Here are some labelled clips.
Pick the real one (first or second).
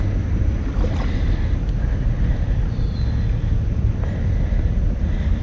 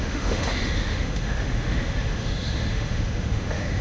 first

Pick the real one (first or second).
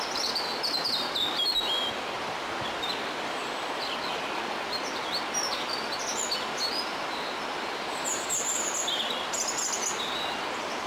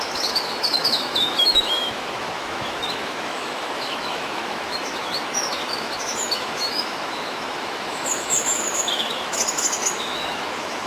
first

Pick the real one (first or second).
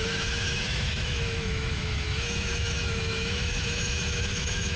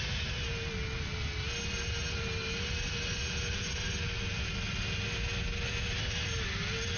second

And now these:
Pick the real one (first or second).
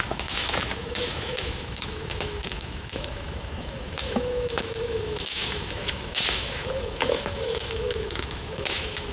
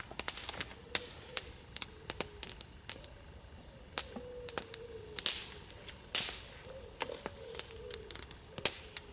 second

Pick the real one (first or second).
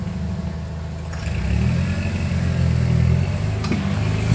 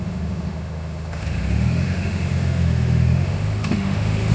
first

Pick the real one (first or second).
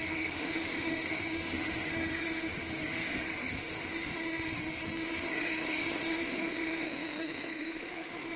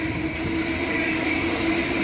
second